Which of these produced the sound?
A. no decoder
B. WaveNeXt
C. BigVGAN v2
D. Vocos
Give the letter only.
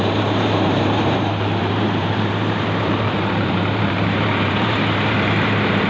C